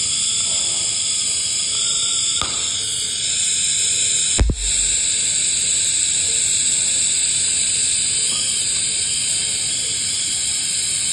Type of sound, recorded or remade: recorded